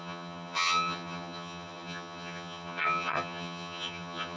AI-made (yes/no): yes